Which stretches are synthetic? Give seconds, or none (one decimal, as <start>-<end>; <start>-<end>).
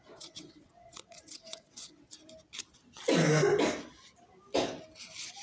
0.0-2.1